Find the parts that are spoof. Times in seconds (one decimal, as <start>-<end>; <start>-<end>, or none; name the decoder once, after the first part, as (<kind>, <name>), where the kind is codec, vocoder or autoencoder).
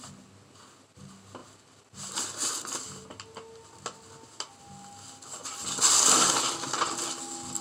none